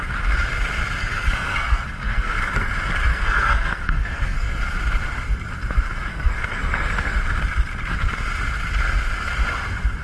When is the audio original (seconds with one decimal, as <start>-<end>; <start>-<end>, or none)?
0.0-1.0; 2.7-3.1; 4.6-6.1; 7.2-10.0